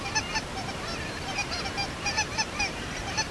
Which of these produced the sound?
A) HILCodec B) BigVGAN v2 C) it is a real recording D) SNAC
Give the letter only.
B